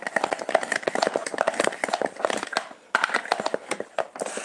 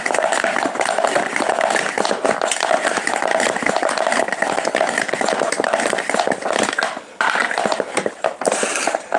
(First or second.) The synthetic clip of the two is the second